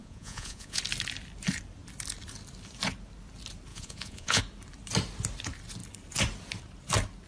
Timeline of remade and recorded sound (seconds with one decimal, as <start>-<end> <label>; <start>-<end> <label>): 0.0-0.8 remade; 0.8-3.7 recorded; 3.7-4.4 remade; 4.4-7.3 recorded